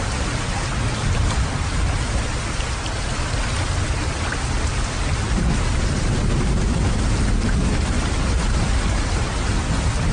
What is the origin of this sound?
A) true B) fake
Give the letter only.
A